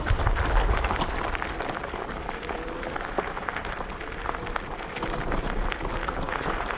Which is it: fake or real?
real